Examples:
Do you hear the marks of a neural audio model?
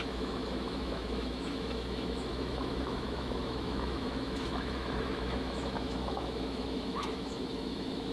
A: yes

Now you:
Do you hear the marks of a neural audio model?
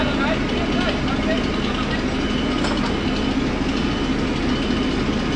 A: no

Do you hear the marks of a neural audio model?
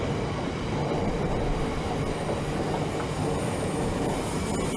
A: no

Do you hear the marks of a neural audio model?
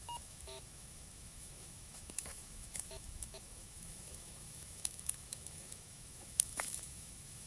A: yes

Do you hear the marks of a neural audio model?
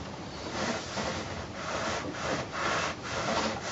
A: no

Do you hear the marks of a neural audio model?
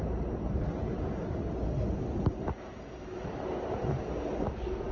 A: no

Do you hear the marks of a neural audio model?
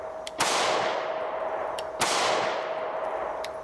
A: no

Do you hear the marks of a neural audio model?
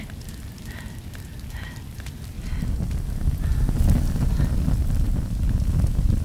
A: no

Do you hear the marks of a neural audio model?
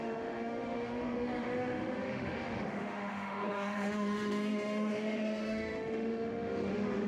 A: yes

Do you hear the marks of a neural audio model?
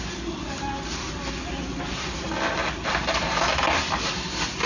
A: no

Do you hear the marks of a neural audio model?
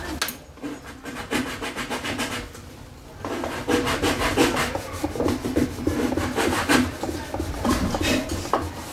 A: no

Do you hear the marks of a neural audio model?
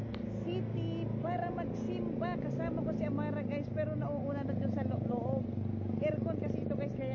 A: no